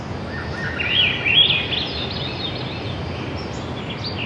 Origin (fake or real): real